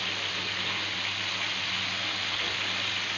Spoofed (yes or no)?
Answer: no